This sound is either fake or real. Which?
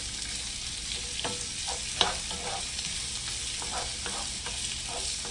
real